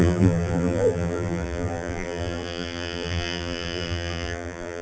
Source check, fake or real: fake